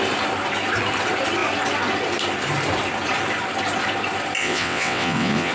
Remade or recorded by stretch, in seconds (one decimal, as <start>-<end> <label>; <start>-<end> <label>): 0.0-4.4 recorded; 4.4-5.5 remade